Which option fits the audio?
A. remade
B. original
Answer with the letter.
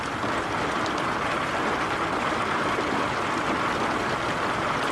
B